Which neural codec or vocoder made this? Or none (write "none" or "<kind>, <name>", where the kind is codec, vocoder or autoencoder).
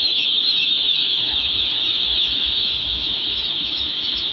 autoencoder, DAC-VAE